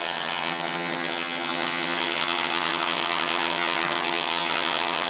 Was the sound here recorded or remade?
remade